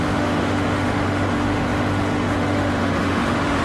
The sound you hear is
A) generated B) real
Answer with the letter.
A